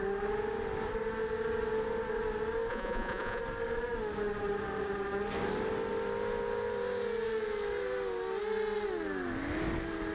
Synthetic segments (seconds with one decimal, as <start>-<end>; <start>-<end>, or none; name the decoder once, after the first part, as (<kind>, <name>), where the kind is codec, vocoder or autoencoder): 2.7-3.4 (vocoder, Vocos)